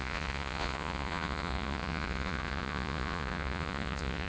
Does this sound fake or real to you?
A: fake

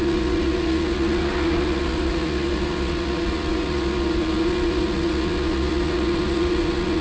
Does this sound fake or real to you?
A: fake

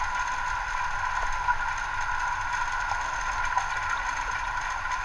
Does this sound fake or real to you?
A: real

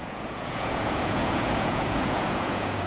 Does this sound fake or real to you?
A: fake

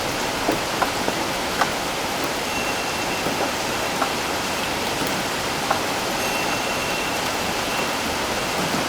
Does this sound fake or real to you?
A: real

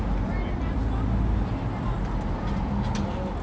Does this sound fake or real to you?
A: real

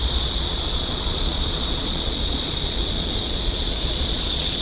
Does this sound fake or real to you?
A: fake